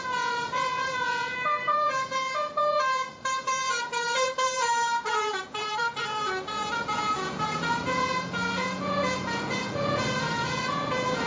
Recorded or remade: remade